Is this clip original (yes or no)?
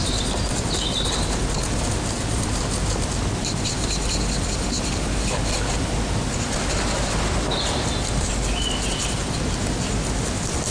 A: yes